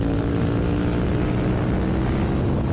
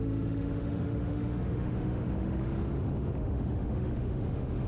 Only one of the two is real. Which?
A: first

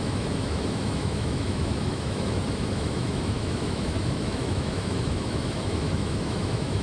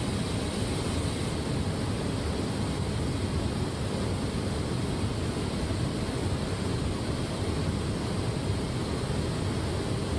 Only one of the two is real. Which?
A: second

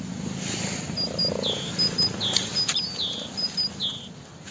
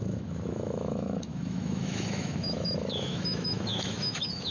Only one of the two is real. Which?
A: first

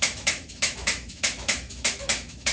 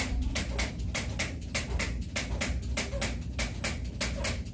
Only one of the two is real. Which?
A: second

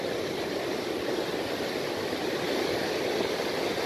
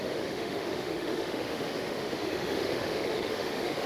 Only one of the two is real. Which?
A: first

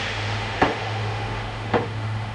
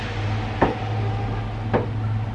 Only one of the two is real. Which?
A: second